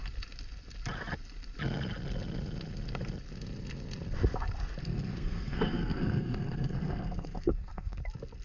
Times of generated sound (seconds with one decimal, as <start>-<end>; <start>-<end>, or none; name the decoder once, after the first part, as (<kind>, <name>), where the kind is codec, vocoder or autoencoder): 4.8-8.0 (codec, SNAC)